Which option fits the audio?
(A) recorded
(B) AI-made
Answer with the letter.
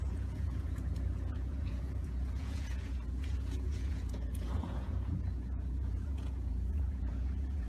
B